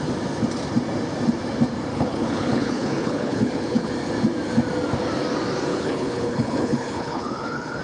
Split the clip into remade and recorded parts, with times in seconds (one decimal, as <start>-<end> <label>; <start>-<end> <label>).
0.0-1.9 recorded; 1.9-3.9 remade; 3.9-5.7 recorded; 5.7-7.8 remade